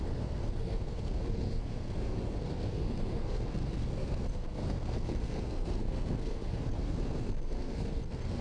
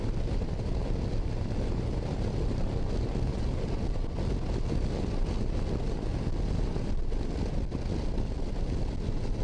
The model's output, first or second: first